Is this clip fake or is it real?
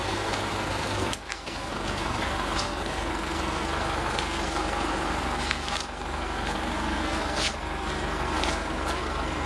fake